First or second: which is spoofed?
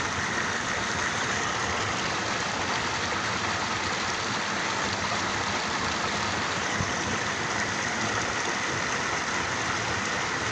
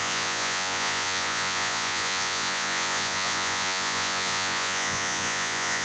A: second